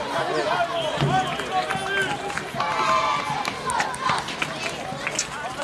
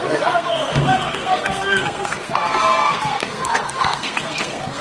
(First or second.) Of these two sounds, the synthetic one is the second